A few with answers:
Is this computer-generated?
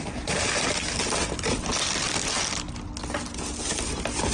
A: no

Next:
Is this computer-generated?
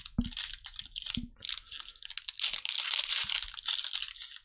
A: no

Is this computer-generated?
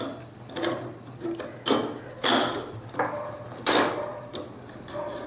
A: no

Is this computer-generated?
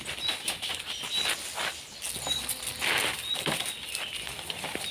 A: no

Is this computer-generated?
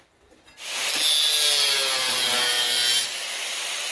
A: no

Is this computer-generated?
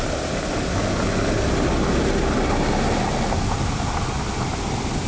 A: no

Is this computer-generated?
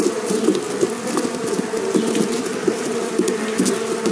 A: no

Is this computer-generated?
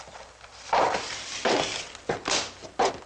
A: no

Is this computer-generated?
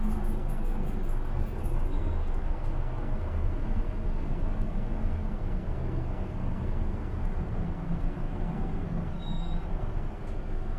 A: yes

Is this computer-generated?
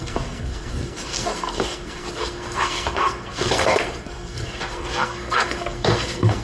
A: yes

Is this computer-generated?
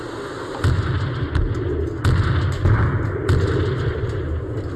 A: no